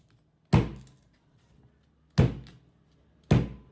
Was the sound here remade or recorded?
recorded